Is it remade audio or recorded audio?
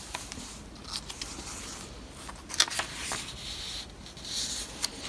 recorded